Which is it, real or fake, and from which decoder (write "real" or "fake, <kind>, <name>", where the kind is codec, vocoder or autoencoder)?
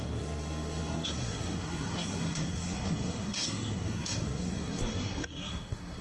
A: fake, codec, SNAC